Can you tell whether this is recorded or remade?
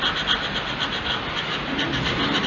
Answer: recorded